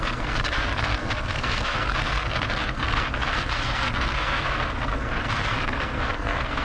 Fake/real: fake